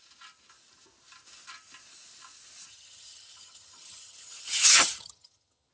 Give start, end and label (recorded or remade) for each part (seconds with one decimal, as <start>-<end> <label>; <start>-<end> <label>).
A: 0.0-2.7 recorded; 2.7-5.7 remade